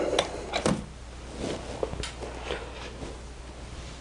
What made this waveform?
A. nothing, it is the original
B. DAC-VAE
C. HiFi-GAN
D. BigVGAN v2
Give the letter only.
A